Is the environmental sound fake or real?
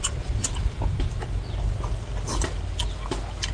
real